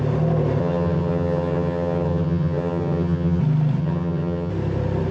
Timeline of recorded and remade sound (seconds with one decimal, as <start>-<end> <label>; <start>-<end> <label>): 0.0-0.6 recorded; 0.6-3.4 remade; 3.4-3.8 recorded; 3.8-4.5 remade; 4.5-5.1 recorded